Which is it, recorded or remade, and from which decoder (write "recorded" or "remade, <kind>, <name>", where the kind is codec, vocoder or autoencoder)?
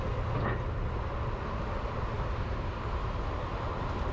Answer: recorded